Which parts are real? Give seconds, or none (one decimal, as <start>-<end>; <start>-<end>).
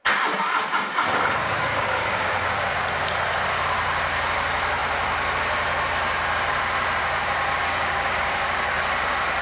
0.0-1.4; 2.3-7.6; 8.4-9.4